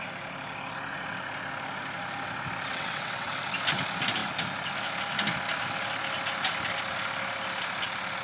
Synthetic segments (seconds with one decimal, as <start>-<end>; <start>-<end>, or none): 2.7-3.3